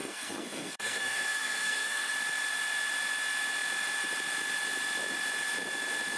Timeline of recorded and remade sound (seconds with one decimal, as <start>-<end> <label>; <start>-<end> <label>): 0.0-2.1 remade; 2.1-6.2 recorded